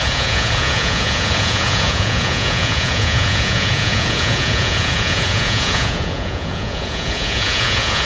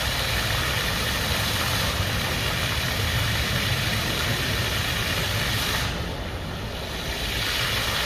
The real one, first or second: second